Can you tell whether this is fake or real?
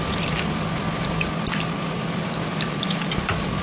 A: real